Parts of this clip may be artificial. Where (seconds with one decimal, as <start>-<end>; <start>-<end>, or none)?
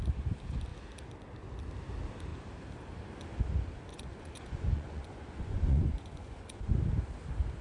3.9-6.7